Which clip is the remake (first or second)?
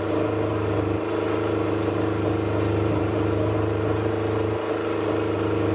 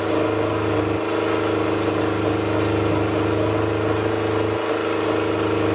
first